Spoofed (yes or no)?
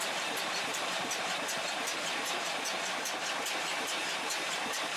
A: yes